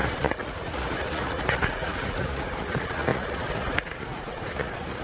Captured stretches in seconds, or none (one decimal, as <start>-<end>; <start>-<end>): none